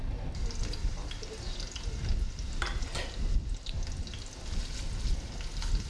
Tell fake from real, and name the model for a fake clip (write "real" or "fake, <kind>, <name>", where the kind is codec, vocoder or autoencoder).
real